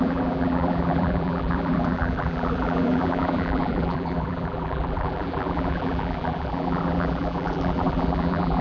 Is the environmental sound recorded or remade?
remade